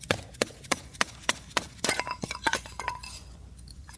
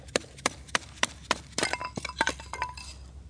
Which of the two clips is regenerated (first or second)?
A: first